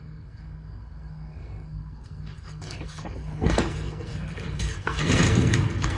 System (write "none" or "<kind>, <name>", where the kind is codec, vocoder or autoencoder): codec, SNAC